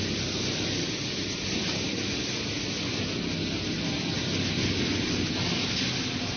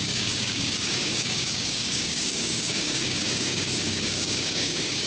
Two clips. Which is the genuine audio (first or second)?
first